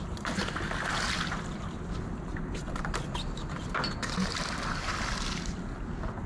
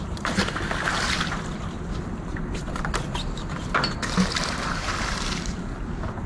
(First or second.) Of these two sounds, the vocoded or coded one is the second